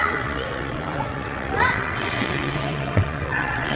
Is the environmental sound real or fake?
fake